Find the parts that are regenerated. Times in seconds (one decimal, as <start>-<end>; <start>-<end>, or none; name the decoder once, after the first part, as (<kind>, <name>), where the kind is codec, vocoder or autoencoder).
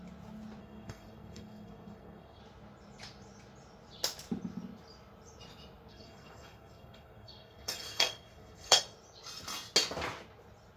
0.6-2.4 (codec, SNAC); 5.9-8.8